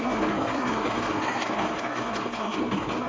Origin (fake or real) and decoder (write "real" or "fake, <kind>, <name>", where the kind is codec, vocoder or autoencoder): fake, codec, SNAC